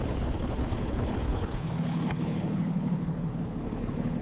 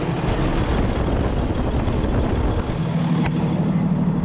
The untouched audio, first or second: second